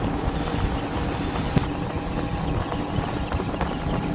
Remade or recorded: recorded